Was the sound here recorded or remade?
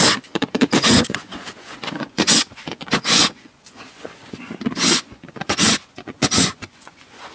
remade